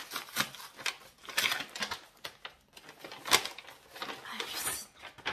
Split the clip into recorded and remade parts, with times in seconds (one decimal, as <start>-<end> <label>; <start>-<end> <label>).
0.0-5.3 recorded